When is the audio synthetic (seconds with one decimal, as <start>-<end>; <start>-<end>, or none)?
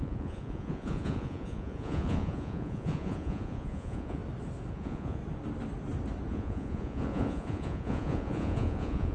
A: 0.0-4.2; 4.7-5.2; 6.3-9.1